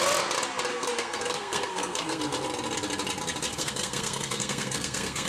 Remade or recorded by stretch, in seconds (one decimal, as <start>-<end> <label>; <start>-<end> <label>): 0.0-0.7 recorded; 0.7-2.2 remade; 2.2-3.5 recorded; 3.5-5.3 remade